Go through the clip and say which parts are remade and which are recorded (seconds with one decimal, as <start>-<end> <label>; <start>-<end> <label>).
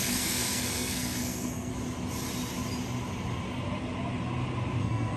0.0-1.7 remade; 1.7-4.8 recorded; 4.8-5.2 remade